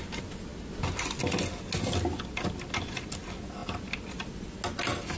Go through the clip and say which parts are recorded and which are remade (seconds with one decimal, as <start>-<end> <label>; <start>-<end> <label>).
0.0-5.2 recorded